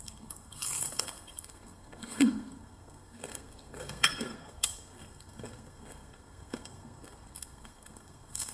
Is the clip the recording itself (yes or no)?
no